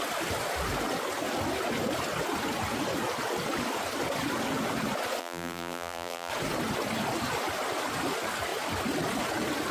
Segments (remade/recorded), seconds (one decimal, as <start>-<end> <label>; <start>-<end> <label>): 0.0-5.2 recorded; 5.2-6.3 remade; 6.3-9.7 recorded